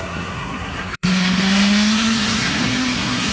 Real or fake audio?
fake